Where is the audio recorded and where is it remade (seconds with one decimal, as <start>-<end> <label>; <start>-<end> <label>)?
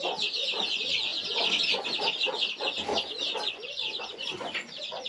0.0-2.9 remade; 2.9-3.5 recorded; 3.5-5.1 remade